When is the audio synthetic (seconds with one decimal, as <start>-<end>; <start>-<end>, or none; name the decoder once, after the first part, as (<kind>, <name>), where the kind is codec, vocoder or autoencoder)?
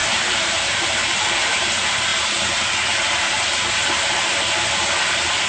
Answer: 0.0-1.7 (vocoder, BigVGAN v2)